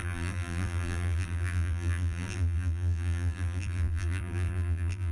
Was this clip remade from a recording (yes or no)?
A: yes